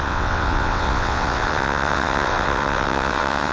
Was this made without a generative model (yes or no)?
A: no